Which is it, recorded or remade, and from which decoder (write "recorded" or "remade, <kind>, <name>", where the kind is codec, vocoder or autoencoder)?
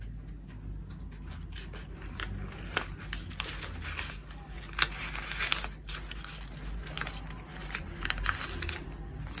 recorded